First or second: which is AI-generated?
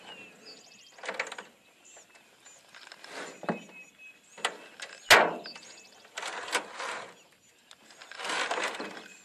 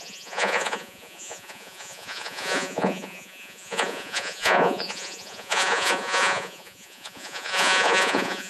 second